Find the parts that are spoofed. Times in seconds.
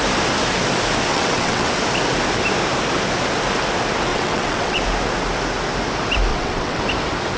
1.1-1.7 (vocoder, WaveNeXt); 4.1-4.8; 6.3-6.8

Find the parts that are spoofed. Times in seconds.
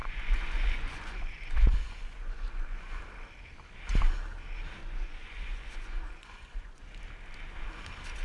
0.0-3.0 (vocoder, Vocos); 4.8-6.8